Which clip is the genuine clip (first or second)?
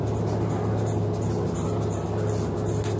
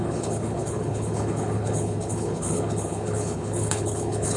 first